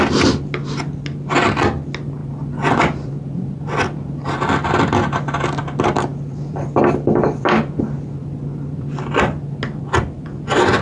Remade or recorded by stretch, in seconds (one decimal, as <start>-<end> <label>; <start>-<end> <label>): 0.0-2.2 recorded; 2.2-4.5 remade; 4.5-6.1 recorded; 6.1-7.8 remade; 7.8-8.2 recorded; 8.2-9.6 remade; 9.6-10.8 recorded